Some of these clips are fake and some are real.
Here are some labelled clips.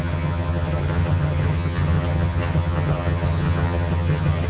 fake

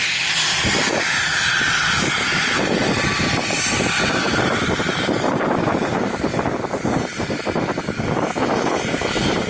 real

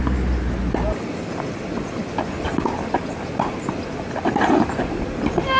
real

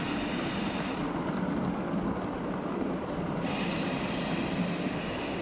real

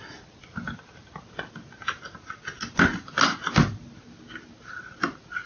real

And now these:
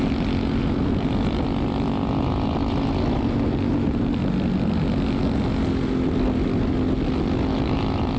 real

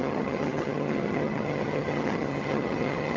fake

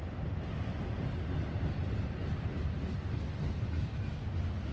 real